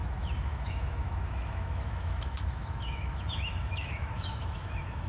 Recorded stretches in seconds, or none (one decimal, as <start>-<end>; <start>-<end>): none